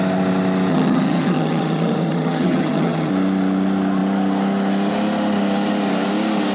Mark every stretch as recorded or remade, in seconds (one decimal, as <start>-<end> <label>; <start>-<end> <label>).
0.0-0.7 recorded; 0.7-3.1 remade; 3.1-6.5 recorded